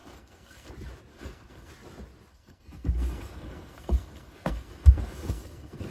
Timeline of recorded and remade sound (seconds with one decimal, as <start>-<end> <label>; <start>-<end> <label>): 0.0-0.7 remade; 0.7-1.1 recorded; 1.1-1.7 remade; 1.7-2.3 recorded; 2.3-5.9 remade

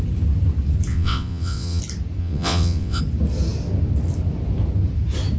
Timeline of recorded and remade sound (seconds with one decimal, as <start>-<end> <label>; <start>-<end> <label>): 0.0-0.9 recorded; 0.9-1.8 remade; 1.8-2.2 recorded; 2.2-3.0 remade; 3.0-5.4 recorded

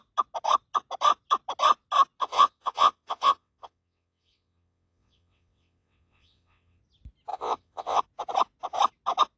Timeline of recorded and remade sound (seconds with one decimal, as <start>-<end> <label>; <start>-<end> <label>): 0.0-2.2 recorded; 2.2-6.8 remade; 6.8-7.3 recorded; 7.3-8.0 remade; 8.0-9.4 recorded

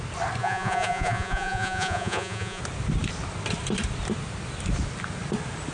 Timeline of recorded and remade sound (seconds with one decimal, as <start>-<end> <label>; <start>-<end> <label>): 0.0-0.4 recorded; 0.4-2.6 remade; 2.6-5.7 recorded

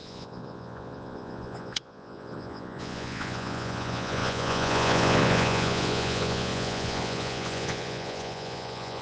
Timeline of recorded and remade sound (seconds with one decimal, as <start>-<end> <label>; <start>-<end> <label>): 0.0-9.0 remade

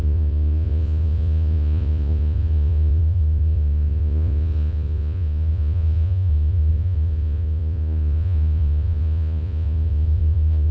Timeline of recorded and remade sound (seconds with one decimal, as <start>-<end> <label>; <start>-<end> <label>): 0.0-10.7 remade

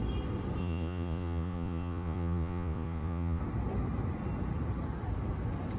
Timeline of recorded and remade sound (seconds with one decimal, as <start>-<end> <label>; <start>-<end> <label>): 0.0-0.6 recorded; 0.6-3.4 remade; 3.4-5.8 recorded